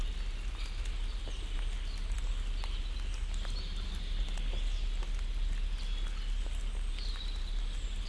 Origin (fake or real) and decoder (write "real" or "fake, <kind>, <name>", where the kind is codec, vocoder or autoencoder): real